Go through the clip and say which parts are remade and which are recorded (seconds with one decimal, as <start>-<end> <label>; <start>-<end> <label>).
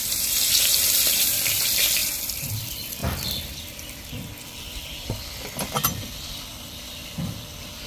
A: 0.0-7.9 remade